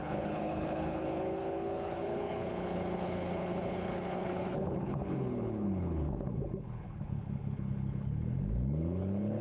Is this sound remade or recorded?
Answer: remade